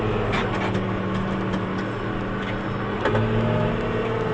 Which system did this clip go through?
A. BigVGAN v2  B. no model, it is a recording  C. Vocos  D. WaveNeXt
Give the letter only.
B